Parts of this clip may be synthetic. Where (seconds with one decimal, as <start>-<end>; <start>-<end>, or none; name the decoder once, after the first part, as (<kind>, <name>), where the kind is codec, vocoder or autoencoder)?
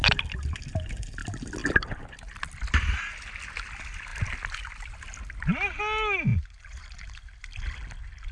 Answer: 6.3-7.2 (vocoder, BigVGAN v2)